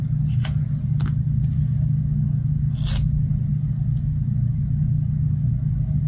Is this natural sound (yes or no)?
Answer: yes